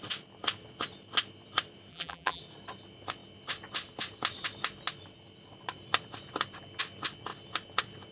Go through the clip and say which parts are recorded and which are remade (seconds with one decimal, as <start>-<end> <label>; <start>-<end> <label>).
0.0-1.9 recorded; 1.9-2.4 remade; 2.4-8.1 recorded